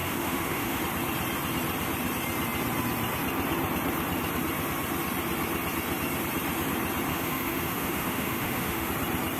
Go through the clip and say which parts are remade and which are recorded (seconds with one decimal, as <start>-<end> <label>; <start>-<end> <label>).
0.0-0.8 remade; 0.8-7.1 recorded; 7.1-8.9 remade; 8.9-9.4 recorded